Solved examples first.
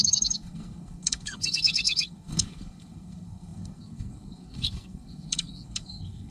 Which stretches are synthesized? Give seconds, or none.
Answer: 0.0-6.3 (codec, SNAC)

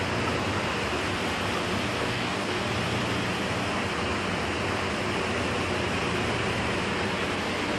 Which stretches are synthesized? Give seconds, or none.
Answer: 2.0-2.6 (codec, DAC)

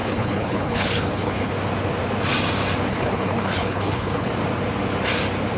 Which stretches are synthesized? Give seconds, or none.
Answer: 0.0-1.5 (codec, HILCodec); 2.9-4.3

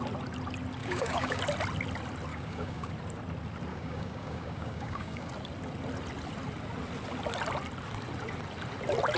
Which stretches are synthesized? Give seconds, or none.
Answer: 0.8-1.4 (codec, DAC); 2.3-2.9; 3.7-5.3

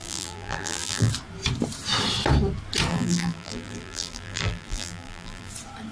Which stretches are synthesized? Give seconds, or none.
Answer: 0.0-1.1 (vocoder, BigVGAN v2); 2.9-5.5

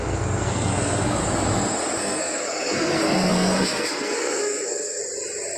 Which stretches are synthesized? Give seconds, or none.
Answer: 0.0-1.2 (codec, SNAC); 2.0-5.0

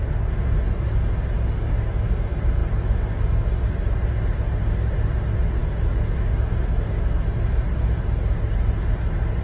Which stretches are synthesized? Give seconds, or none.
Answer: none